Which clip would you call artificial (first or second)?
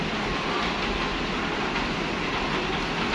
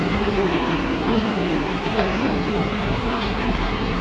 second